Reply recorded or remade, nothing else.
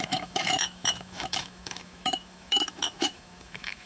remade